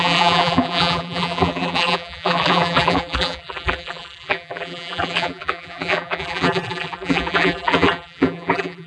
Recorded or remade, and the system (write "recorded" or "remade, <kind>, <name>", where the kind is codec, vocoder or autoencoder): remade, vocoder, BigVGAN v2